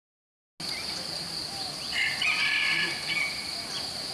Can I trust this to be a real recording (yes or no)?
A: yes